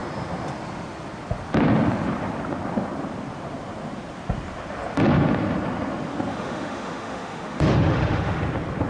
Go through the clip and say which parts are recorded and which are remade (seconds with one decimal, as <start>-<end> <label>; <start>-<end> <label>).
0.0-6.3 recorded; 6.3-8.4 remade; 8.4-8.9 recorded